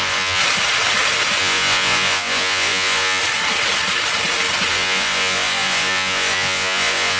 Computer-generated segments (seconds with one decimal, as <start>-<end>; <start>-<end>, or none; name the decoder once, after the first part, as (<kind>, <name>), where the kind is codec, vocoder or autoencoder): 0.0-0.4 (vocoder, Vocos); 1.4-3.2; 4.7-7.2